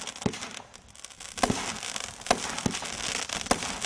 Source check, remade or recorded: recorded